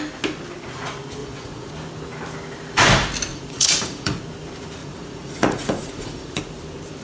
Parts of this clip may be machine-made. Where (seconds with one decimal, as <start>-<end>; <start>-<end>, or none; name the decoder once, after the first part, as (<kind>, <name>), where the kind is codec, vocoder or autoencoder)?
1.2-1.7 (vocoder, Vocos); 3.3-4.2; 4.8-6.4